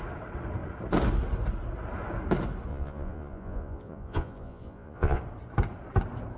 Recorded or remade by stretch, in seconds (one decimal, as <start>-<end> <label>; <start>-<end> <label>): 0.0-2.7 recorded; 2.7-5.2 remade; 5.2-6.4 recorded